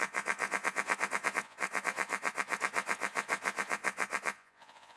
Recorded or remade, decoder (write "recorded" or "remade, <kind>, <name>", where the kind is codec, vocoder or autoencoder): remade, vocoder, Vocos